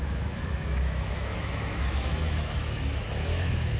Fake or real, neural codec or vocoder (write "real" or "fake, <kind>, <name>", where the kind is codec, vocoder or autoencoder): fake, autoencoder, DAC-VAE